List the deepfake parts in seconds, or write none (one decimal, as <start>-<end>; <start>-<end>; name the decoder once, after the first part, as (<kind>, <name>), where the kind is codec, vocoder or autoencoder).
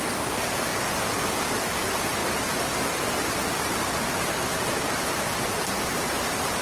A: 0.0-0.7 (vocoder, BigVGAN v2); 1.4-6.6